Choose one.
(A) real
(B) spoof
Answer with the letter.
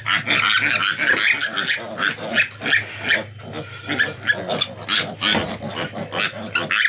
A